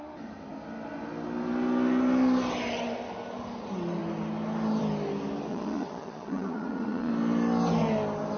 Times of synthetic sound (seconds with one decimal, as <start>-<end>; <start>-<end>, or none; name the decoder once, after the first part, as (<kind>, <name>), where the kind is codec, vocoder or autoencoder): 5.5-7.1 (vocoder, Vocos)